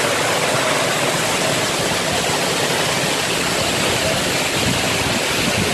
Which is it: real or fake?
real